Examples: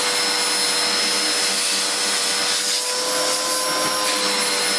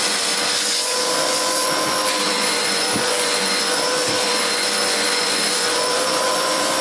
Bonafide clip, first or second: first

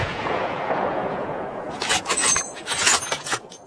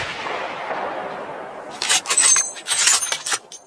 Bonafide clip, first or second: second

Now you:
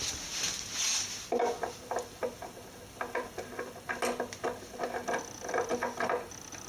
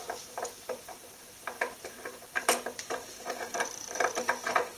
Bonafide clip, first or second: first